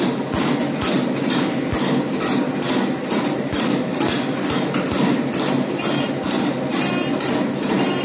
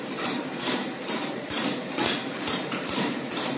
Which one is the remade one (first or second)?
second